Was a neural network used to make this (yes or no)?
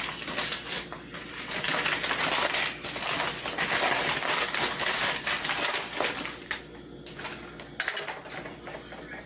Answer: no